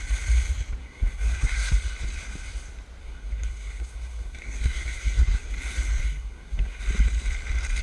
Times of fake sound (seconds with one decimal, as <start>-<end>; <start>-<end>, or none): 0.8-1.7; 3.0-5.5; 6.0-6.8